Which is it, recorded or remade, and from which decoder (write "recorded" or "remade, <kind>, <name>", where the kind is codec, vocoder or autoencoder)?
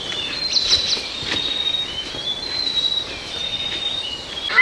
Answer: recorded